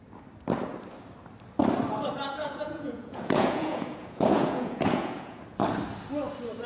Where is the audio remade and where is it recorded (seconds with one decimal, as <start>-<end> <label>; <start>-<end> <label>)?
0.0-2.4 recorded; 2.4-5.4 remade; 5.4-6.7 recorded